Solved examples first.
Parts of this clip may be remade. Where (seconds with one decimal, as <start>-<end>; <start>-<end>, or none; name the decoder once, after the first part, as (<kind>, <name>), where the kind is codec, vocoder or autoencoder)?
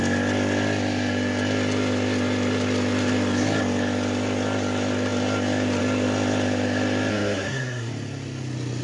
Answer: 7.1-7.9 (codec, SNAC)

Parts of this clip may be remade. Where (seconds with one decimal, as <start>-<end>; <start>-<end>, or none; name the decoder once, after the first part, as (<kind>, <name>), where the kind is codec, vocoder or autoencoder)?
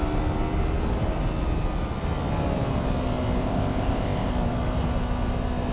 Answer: 3.4-4.3 (codec, ZipCodec)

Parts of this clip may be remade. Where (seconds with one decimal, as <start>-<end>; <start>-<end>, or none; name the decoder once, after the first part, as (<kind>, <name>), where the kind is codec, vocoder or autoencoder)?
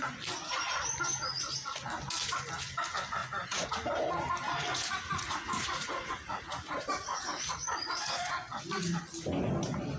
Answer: 3.2-3.7 (vocoder, Vocos); 4.7-8.6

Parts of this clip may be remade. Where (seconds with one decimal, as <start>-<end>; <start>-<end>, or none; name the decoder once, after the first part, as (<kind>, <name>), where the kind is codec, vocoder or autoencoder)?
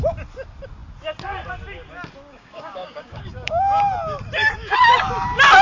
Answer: 2.3-3.6 (codec, DAC)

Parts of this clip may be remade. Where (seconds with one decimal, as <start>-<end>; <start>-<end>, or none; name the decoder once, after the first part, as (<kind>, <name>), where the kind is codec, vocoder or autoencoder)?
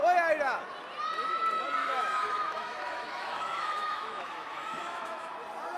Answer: 1.8-5.3 (autoencoder, DAC-VAE)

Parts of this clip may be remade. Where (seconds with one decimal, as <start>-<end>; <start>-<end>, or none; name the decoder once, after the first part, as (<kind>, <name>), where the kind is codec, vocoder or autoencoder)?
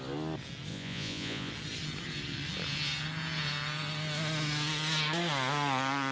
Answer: 0.7-1.5 (vocoder, Vocos)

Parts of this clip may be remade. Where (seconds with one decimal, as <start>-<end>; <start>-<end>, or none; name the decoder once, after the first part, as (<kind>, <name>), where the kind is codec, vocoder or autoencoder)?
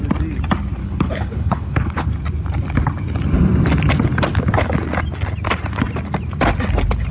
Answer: 0.8-2.1 (codec, HILCodec)